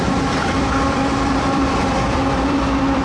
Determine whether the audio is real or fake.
fake